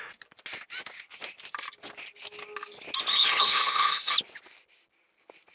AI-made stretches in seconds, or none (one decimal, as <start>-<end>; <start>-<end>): 3.1-4.1